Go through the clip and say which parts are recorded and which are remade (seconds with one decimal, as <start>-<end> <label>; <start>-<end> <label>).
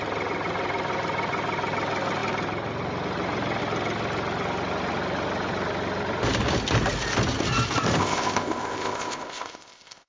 0.0-8.0 recorded; 8.0-10.1 remade